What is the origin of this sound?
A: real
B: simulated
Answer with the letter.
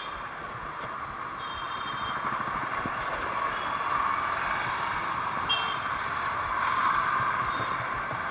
A